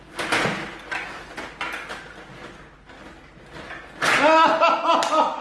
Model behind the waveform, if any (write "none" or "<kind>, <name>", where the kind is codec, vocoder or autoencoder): none